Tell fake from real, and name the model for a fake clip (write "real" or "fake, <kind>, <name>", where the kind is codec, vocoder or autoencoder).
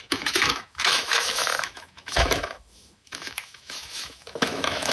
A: fake, autoencoder, DAC-VAE